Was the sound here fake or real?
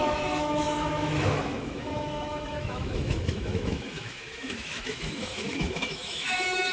fake